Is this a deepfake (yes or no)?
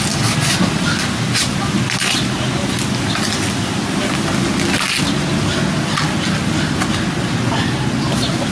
no